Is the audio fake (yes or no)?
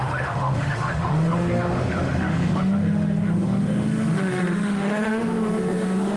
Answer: yes